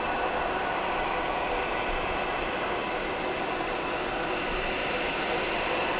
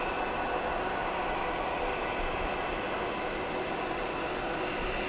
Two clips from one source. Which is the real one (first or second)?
second